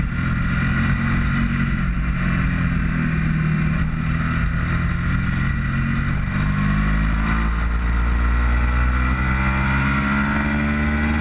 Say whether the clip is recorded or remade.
recorded